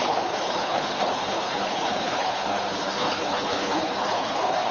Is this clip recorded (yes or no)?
no